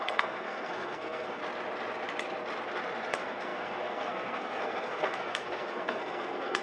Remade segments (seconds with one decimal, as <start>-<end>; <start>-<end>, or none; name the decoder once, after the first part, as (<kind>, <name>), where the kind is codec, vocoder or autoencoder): 0.0-1.4 (codec, SNAC); 3.1-6.6